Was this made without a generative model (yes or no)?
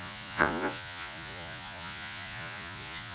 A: no